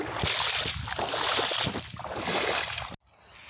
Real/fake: real